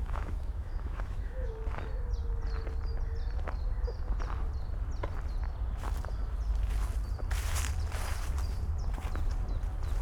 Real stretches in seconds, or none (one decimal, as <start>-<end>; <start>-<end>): 1.5-10.0